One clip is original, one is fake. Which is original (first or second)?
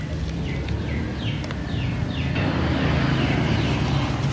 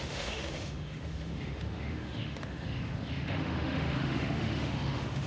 first